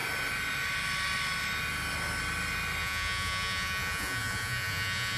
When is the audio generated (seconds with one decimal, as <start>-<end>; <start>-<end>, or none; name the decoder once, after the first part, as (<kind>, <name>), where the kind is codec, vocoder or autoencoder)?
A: 2.8-5.2 (vocoder, Vocos)